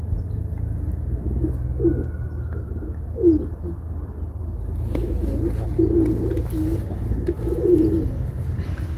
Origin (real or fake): real